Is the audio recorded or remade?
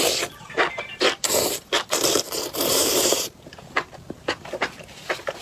remade